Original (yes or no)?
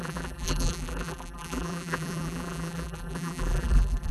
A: no